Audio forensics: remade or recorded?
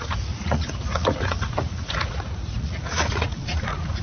remade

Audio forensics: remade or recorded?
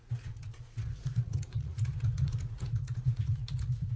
remade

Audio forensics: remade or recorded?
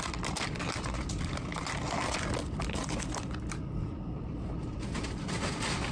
recorded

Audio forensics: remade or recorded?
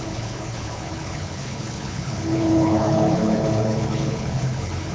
remade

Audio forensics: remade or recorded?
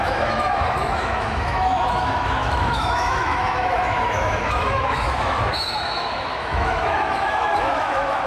remade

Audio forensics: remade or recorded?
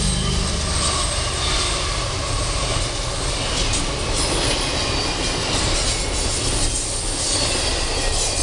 recorded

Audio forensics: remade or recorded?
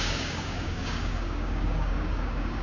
remade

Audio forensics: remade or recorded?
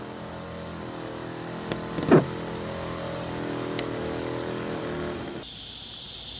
recorded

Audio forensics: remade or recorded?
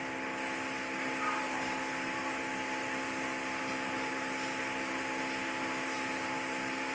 recorded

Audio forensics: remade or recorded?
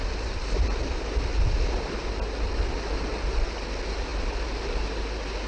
recorded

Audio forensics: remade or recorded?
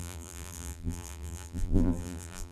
remade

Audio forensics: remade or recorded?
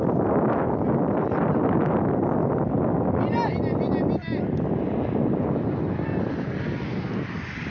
recorded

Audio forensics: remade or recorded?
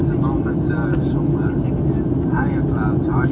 recorded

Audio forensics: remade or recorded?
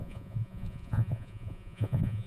remade